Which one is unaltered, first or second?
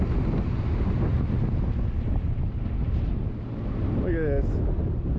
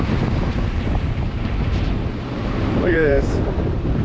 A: first